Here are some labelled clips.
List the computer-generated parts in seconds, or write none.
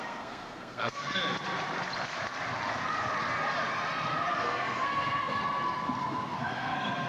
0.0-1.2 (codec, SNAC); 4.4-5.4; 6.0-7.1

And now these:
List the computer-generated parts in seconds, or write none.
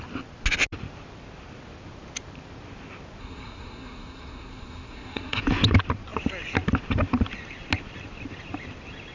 3.2-5.4 (codec, SNAC)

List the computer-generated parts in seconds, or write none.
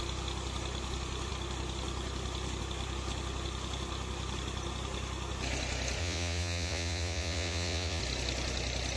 6.0-8.0 (vocoder, Vocos)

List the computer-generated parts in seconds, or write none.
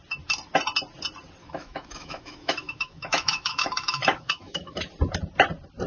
1.4-4.9 (autoencoder, DAC-VAE)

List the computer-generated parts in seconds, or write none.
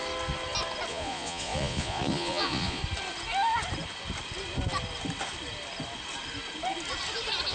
0.9-2.8 (vocoder, Vocos)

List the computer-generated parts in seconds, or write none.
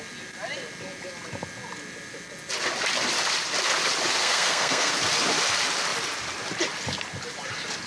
4.2-4.9 (codec, SNAC)